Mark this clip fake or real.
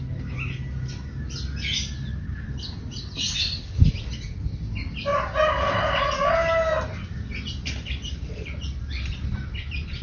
real